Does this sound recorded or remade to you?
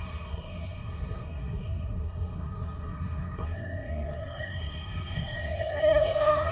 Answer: remade